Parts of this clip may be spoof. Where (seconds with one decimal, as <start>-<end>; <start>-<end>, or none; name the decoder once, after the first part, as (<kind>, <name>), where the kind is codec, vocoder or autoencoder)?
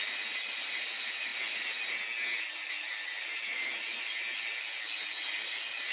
none